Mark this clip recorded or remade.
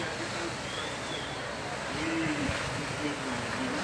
recorded